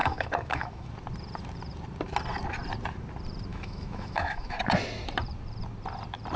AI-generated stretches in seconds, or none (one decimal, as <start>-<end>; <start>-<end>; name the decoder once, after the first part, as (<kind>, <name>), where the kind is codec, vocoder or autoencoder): 0.0-0.9 (autoencoder, DAC-VAE); 3.5-4.6